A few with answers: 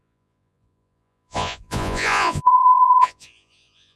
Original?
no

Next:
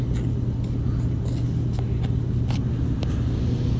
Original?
yes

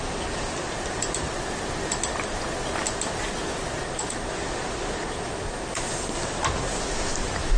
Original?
yes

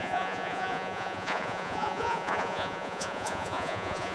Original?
no